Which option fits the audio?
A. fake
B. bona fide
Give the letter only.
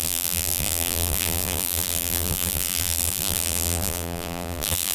A